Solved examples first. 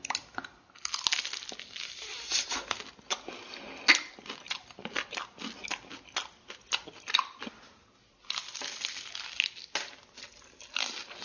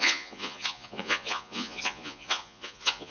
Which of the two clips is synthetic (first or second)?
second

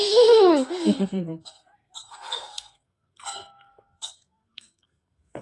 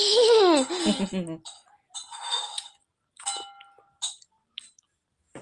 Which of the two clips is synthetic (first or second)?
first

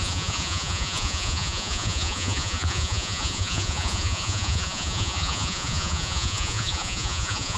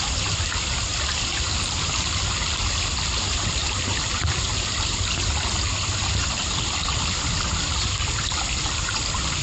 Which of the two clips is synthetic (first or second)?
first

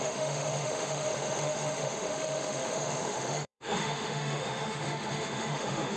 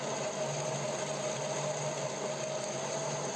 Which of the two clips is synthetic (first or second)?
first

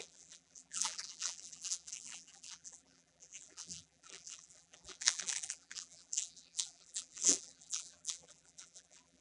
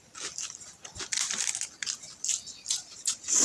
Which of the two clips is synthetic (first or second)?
first